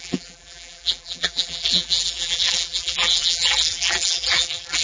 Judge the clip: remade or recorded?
remade